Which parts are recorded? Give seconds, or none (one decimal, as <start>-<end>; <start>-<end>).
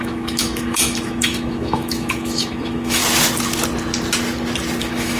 3.0-4.8